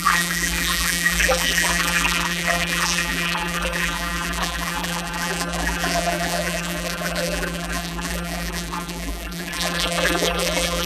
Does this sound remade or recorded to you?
remade